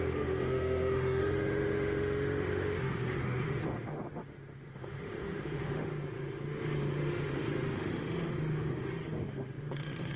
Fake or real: fake